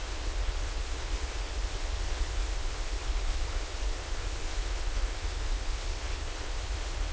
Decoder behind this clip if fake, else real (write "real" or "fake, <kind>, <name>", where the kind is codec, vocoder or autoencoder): fake, codec, HILCodec